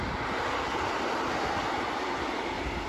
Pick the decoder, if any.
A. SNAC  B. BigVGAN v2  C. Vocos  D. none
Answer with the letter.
D